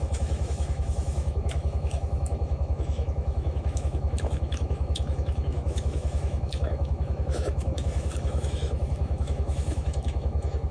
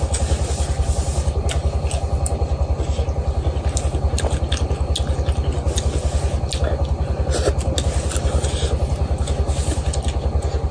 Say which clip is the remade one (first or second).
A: first